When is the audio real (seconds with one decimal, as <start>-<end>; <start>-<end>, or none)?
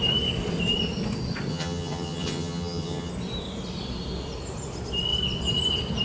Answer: 0.0-1.5; 3.1-6.0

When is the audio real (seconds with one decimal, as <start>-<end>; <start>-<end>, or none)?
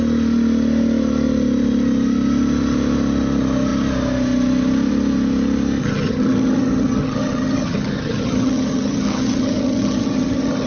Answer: 0.0-5.8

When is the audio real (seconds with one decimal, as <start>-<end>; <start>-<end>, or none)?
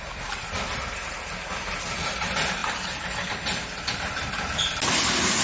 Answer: 0.0-5.4